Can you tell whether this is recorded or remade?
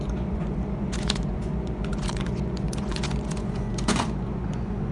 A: remade